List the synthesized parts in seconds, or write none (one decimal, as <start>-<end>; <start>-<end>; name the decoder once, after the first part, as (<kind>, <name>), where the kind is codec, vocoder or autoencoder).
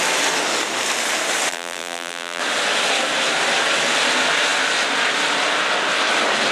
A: 1.5-2.4 (vocoder, BigVGAN v2)